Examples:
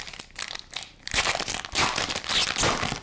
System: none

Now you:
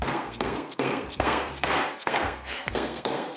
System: codec, SNAC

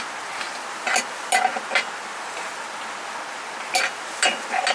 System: none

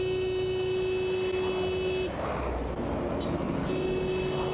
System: none